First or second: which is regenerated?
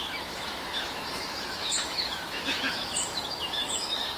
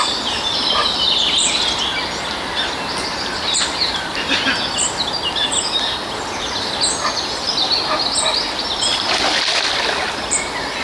first